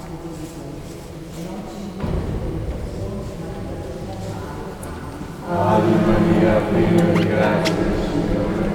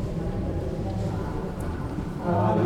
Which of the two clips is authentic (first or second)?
first